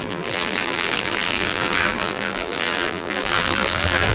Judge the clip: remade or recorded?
remade